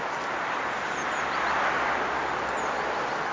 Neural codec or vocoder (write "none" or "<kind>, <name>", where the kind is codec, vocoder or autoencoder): none